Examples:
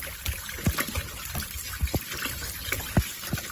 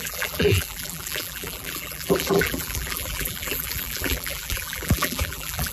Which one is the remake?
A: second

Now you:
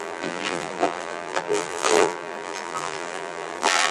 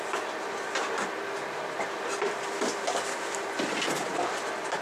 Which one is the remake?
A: first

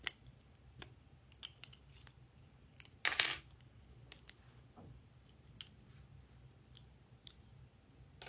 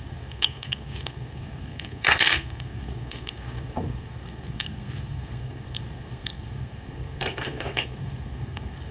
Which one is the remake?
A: second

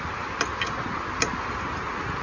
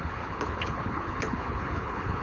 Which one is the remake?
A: second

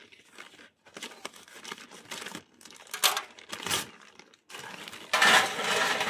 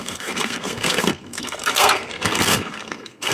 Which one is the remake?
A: second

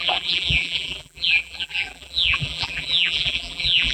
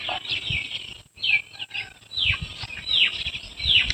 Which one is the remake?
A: first